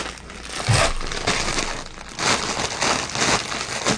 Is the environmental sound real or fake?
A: real